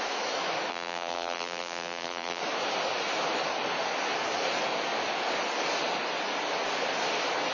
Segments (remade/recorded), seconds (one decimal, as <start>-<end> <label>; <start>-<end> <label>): 0.0-0.7 recorded; 0.7-2.4 remade; 2.4-7.5 recorded